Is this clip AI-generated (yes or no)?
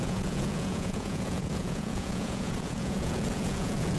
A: yes